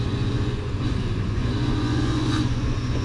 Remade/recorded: remade